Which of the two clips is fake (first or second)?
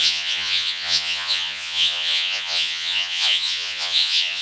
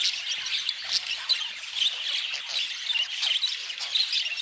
first